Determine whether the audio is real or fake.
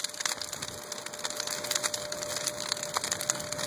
real